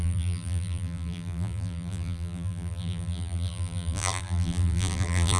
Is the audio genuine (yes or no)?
no